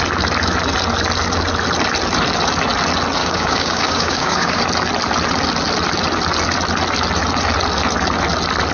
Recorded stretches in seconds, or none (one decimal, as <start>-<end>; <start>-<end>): 0.0-3.2; 4.6-8.7